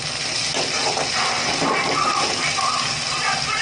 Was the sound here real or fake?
real